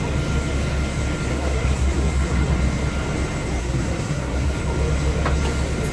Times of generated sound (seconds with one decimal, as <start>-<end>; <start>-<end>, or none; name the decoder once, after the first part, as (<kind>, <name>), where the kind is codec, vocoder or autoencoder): 1.3-2.5 (codec, SNAC); 3.6-4.6